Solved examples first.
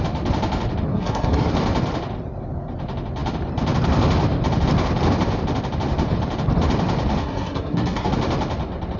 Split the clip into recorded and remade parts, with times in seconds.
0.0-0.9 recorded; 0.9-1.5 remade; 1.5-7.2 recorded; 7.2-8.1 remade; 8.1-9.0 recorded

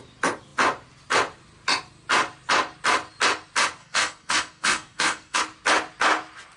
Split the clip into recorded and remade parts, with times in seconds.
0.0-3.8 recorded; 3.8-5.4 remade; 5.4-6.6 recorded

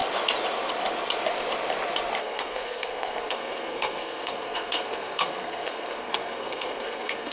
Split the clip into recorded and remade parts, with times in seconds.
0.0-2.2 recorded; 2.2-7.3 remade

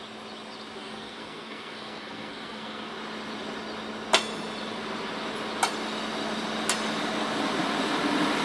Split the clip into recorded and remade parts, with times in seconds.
0.0-0.8 recorded; 0.8-2.9 remade; 2.9-8.4 recorded

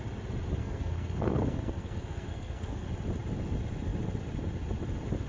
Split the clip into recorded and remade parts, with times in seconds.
0.0-0.6 recorded; 0.6-2.9 remade; 2.9-5.3 recorded

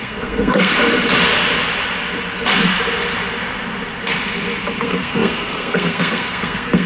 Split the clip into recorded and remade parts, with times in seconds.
0.0-0.7 remade; 0.7-4.8 recorded; 4.8-6.9 remade

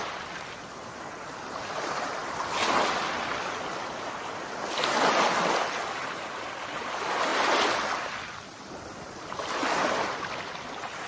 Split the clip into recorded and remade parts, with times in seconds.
0.0-11.1 recorded

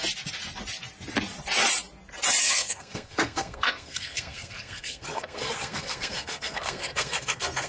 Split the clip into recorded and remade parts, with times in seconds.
0.0-2.4 recorded; 2.4-7.7 remade